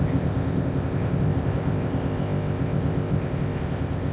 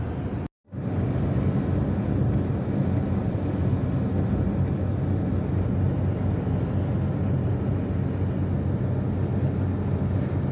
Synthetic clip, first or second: first